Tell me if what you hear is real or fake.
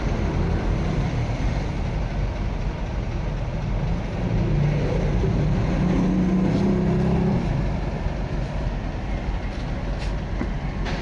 real